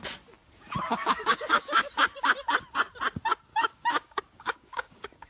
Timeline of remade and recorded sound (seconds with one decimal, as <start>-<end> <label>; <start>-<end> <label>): 0.0-0.4 recorded; 0.4-1.9 remade; 1.9-3.5 recorded; 3.5-5.3 remade